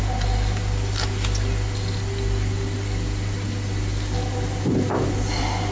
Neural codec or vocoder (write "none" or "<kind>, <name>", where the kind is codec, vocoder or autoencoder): none